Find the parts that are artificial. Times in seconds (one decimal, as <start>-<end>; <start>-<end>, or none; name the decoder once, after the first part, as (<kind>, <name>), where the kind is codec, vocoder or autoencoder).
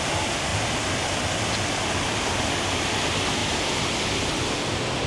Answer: none